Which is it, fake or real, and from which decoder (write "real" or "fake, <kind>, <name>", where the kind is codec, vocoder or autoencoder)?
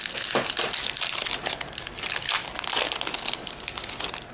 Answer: real